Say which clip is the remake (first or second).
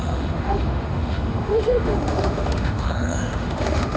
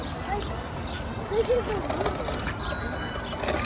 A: first